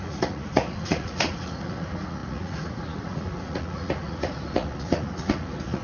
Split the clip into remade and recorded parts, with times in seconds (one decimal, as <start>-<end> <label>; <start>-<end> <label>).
0.0-5.8 remade